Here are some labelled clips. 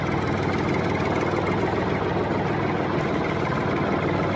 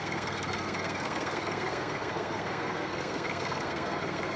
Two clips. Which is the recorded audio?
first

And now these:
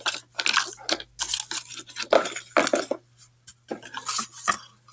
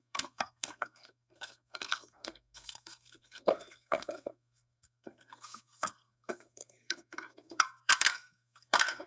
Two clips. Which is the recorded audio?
first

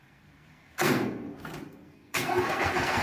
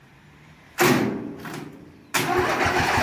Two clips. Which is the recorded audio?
second